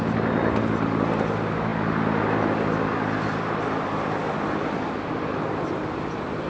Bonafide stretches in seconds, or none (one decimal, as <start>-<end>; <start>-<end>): 0.0-6.5